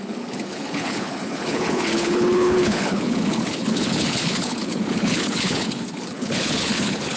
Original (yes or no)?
no